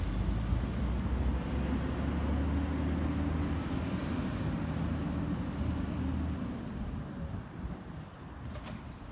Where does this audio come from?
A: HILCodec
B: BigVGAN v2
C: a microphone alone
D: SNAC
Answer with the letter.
C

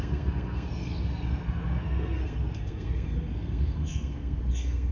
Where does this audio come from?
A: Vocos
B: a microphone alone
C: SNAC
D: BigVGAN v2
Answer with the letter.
C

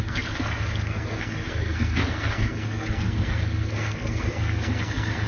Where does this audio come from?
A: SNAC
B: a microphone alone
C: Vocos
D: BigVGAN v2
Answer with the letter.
A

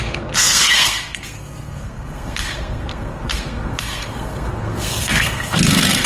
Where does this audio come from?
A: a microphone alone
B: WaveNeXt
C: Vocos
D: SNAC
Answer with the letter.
D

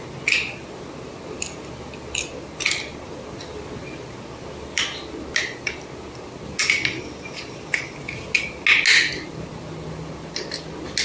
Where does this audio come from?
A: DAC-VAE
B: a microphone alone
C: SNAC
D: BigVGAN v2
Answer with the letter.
B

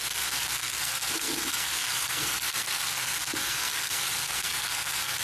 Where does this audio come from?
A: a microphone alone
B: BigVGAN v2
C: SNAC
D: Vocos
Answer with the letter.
C